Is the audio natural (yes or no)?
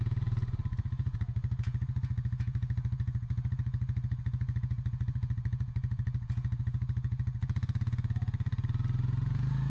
no